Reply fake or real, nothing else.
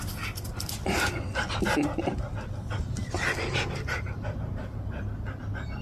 real